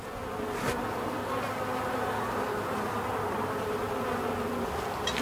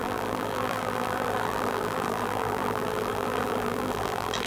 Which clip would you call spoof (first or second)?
second